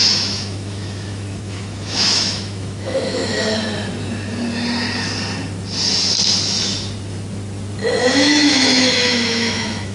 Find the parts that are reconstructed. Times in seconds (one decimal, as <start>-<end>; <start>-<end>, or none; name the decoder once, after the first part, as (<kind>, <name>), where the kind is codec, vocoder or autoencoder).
0.0-3.2 (autoencoder, DAC-VAE); 8.1-9.9

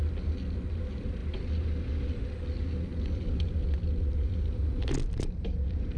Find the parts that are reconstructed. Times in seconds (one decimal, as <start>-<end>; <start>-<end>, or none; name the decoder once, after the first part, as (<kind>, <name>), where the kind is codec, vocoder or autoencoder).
none

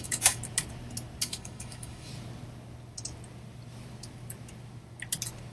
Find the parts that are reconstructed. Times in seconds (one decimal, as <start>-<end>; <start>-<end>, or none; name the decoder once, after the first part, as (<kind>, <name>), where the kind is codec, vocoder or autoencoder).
0.0-0.4 (autoencoder, DAC-VAE); 1.2-2.1

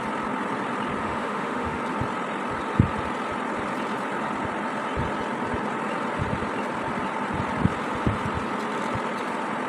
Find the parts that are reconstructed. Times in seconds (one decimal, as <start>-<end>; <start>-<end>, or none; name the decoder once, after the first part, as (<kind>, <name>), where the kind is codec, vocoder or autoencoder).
1.0-1.8 (autoencoder, DAC-VAE)

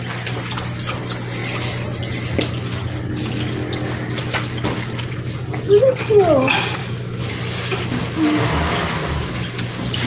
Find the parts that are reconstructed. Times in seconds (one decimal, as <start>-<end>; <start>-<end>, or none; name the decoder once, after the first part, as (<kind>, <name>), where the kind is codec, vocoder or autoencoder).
6.8-7.3 (autoencoder, DAC-VAE)